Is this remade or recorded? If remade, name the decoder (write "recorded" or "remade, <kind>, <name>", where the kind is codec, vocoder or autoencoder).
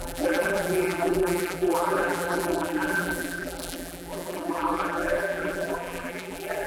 remade, vocoder, BigVGAN v2